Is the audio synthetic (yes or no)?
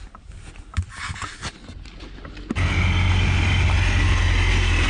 no